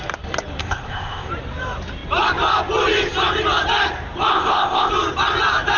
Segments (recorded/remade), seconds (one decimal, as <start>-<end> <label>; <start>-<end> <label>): 0.0-0.6 recorded; 0.6-1.3 remade; 1.3-4.3 recorded; 4.3-4.9 remade; 4.9-5.8 recorded